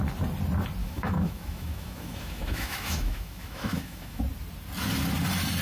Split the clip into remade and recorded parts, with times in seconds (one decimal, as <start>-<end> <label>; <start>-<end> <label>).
0.0-0.8 recorded; 0.8-4.2 remade; 4.2-5.6 recorded